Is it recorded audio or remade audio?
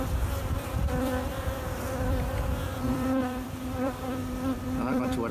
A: remade